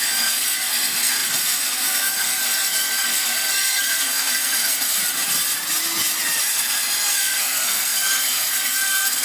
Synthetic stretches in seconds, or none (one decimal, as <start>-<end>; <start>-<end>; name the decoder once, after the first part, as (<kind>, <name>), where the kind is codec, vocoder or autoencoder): 0.0-5.0 (codec, SNAC); 6.5-9.2